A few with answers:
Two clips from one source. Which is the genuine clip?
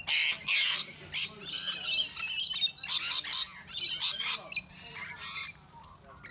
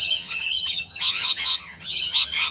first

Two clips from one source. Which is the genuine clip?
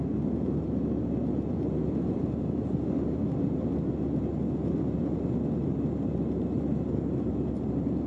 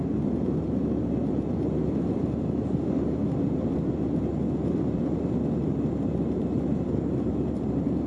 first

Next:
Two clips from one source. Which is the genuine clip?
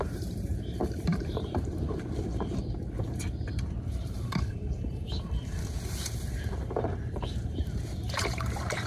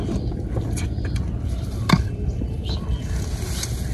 second